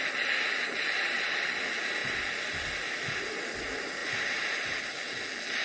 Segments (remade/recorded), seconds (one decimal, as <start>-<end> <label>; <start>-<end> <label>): 0.0-5.6 recorded